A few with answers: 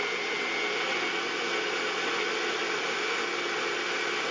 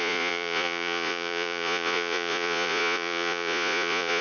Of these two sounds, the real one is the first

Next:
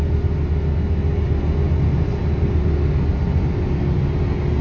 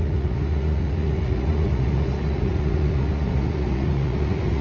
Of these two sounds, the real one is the first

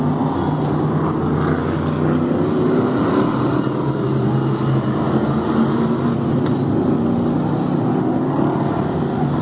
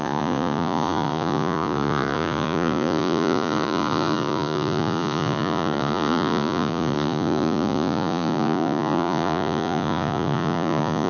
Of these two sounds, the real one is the first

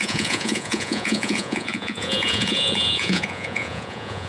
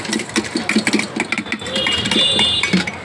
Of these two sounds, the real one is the second